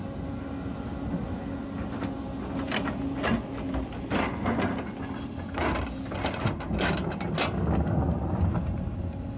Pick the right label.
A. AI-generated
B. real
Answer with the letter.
B